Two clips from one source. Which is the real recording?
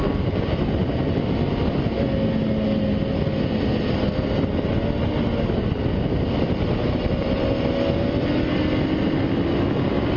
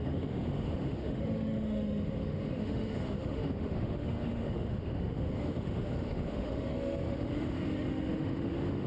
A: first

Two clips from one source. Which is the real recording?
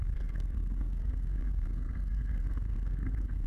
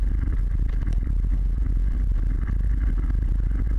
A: second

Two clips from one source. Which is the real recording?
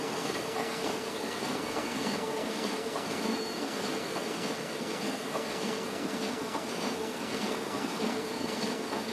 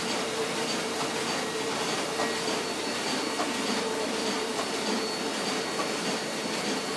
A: second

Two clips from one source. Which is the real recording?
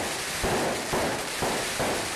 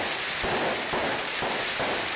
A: first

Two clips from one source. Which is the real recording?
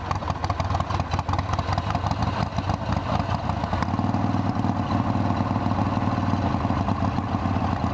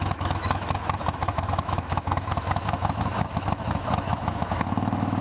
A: first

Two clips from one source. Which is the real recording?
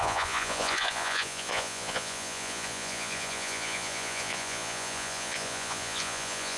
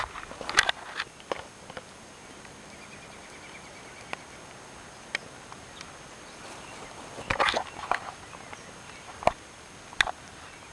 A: second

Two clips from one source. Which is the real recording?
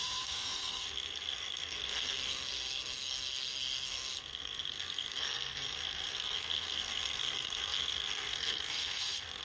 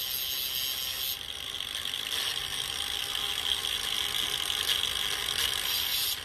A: second